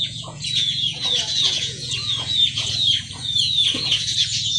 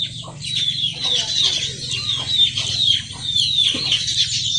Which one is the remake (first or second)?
first